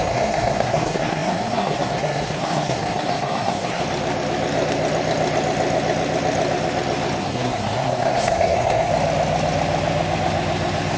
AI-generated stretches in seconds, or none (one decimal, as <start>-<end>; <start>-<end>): 0.0-3.8; 7.2-8.9